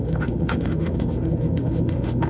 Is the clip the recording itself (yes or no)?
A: no